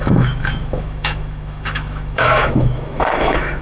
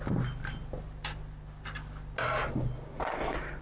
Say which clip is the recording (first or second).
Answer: second